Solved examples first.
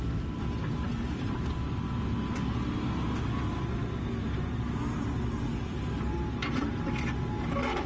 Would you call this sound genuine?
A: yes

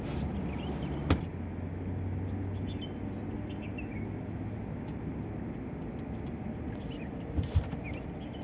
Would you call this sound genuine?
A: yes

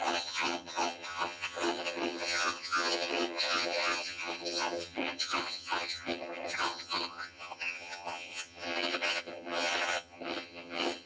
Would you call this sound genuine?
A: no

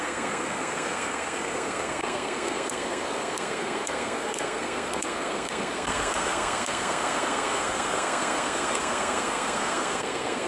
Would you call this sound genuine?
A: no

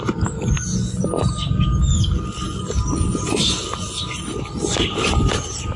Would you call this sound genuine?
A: yes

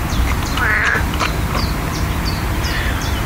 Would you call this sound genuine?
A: yes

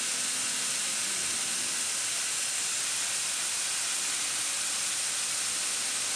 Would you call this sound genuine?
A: yes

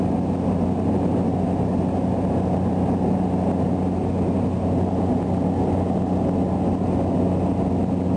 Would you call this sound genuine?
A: yes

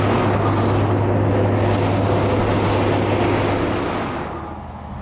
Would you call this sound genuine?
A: yes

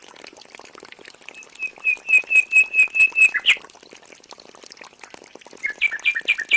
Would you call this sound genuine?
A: yes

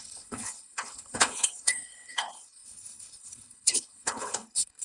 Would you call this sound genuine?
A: no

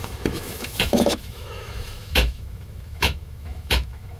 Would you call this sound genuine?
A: no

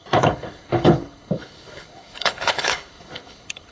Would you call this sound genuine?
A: no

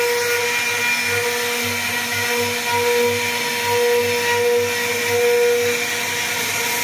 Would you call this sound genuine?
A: yes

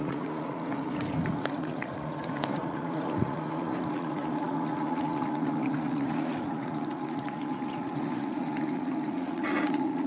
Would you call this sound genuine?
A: no